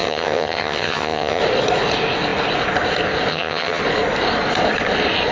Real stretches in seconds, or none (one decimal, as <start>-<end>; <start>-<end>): 1.4-3.3; 3.8-5.3